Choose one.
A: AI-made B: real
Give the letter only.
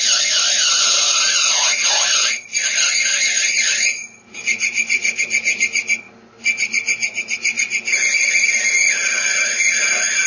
B